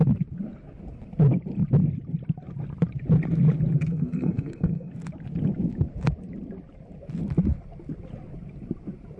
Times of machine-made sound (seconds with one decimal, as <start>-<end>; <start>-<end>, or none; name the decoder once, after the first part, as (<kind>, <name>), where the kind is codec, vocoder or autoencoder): 3.9-4.9 (codec, SNAC)